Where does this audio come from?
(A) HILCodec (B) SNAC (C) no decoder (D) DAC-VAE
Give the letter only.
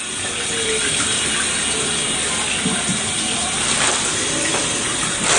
C